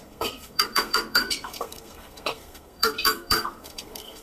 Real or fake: fake